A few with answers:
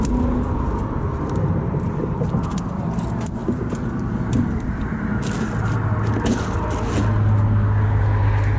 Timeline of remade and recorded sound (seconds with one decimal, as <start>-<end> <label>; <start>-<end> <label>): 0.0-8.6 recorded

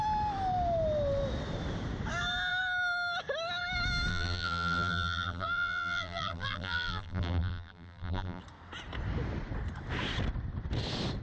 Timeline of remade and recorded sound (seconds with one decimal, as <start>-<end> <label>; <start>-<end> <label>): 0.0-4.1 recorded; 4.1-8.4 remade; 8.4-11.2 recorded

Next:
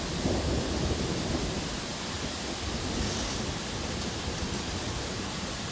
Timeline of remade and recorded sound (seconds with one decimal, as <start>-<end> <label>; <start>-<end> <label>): 0.0-5.7 recorded